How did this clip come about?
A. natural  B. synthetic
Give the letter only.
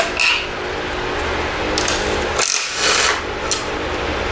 A